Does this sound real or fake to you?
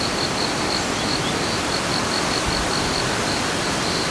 real